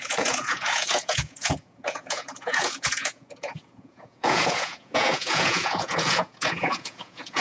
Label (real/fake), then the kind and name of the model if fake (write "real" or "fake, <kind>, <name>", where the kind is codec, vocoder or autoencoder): fake, vocoder, Vocos